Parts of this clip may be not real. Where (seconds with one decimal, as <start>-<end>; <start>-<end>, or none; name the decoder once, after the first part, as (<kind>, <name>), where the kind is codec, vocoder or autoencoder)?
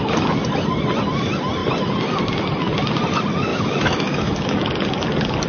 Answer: 3.5-4.7 (autoencoder, DAC-VAE)